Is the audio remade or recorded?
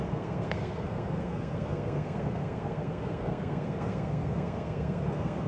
remade